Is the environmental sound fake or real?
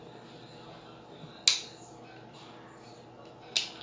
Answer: real